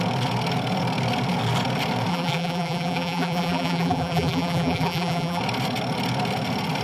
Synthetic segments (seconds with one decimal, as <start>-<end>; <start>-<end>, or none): 2.1-5.4